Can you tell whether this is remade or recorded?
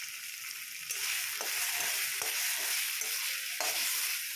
recorded